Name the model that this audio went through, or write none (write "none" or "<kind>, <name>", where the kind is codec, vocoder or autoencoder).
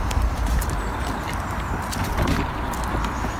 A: none